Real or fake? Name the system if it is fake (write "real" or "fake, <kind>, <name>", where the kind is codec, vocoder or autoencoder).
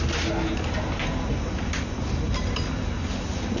real